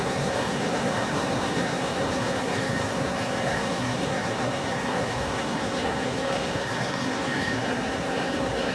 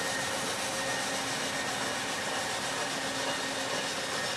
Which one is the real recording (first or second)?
second